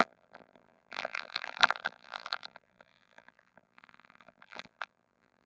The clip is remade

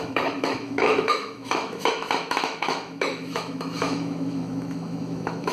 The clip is remade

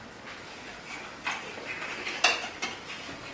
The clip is recorded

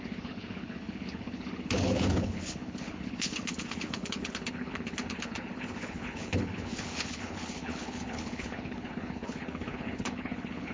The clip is remade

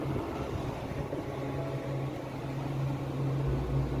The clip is recorded